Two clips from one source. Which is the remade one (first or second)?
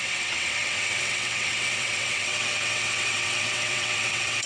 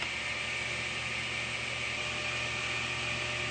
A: first